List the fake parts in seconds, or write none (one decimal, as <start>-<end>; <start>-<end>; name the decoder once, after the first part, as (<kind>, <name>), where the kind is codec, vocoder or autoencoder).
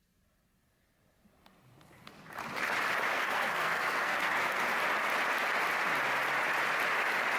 3.1-4.8 (codec, SNAC)